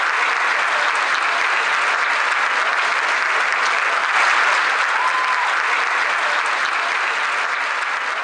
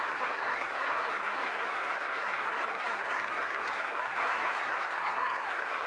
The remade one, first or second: second